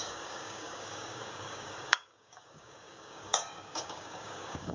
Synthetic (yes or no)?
yes